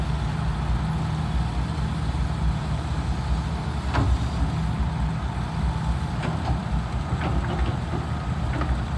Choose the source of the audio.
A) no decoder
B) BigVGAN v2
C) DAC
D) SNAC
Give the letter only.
A